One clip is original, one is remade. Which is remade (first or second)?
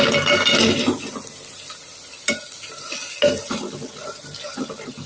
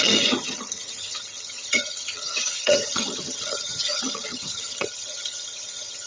second